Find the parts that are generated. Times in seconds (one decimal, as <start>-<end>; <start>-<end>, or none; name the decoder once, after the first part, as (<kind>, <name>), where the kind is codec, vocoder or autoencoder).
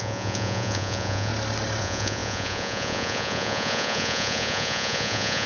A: 0.0-1.3 (vocoder, Vocos); 1.8-5.5